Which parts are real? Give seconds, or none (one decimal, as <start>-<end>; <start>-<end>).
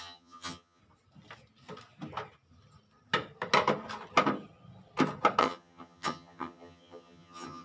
0.8-5.4